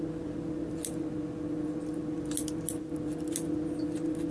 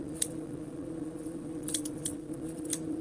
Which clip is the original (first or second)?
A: first